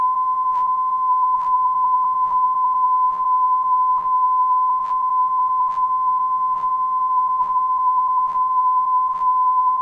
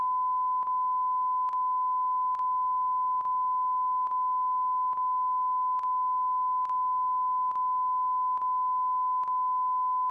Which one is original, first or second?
second